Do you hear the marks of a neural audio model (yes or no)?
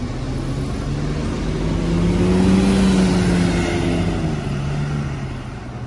no